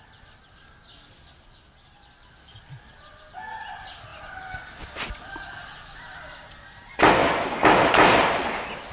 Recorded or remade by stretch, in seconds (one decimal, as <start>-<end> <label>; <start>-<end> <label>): 0.0-8.9 recorded